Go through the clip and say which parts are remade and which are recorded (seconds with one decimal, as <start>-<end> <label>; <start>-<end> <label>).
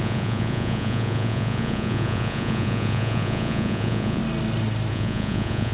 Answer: 0.0-4.2 remade; 4.2-4.9 recorded; 4.9-5.7 remade